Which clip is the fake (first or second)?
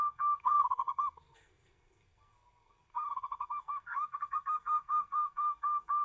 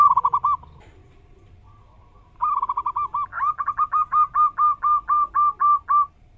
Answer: first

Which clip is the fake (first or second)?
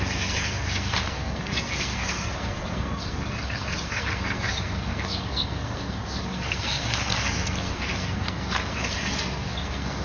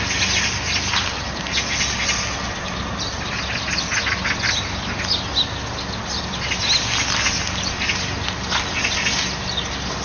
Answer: first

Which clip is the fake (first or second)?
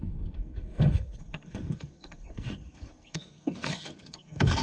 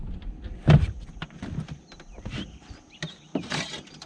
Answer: first